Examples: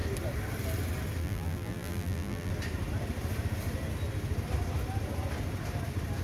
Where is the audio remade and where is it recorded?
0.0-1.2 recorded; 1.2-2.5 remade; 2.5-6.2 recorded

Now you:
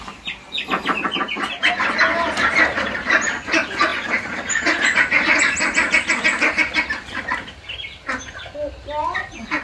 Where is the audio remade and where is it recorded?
0.0-9.6 recorded